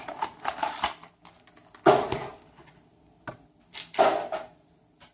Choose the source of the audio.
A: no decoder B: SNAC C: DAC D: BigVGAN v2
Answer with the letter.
A